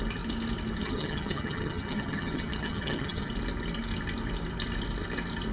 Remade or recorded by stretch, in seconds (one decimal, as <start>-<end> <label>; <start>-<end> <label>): 0.0-0.8 recorded; 0.8-3.3 remade; 3.3-5.5 recorded